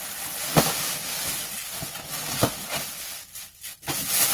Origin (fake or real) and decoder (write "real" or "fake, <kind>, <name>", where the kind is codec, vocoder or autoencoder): real